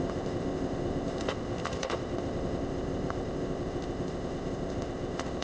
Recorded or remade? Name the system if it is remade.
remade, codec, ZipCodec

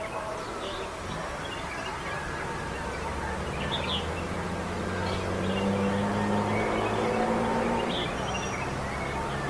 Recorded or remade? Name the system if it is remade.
recorded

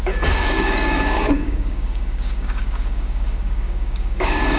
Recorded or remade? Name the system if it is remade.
remade, codec, DAC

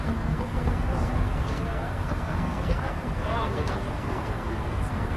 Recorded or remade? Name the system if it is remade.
remade, codec, SNAC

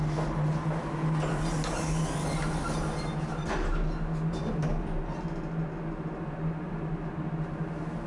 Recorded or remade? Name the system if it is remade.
recorded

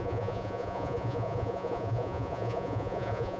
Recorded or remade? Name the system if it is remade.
remade, vocoder, Vocos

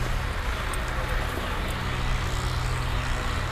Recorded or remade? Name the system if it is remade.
recorded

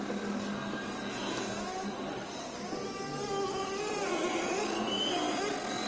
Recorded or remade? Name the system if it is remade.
recorded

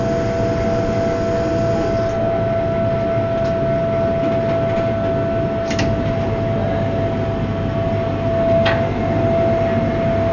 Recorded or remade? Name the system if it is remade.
recorded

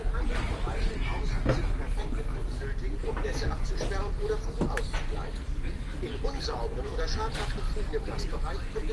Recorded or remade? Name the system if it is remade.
recorded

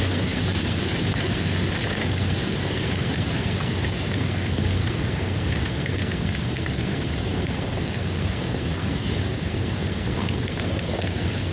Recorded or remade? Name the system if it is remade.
remade, codec, SNAC